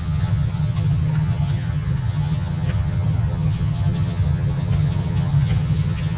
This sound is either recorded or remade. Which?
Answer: remade